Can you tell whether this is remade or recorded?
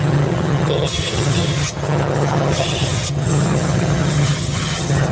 remade